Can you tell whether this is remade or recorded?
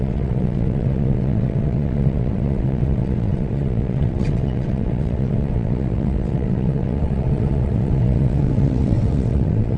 remade